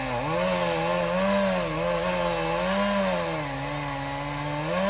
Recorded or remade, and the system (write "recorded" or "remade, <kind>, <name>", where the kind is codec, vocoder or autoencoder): recorded